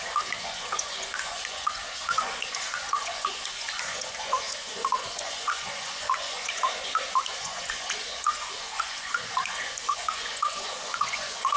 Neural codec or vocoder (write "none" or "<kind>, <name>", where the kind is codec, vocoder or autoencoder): vocoder, Vocos